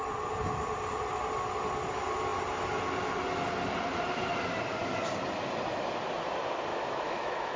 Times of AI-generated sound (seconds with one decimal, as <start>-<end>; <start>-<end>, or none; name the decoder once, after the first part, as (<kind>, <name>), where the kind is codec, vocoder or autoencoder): 6.7-7.6 (autoencoder, DAC-VAE)